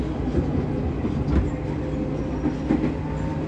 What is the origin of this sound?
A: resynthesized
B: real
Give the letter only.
B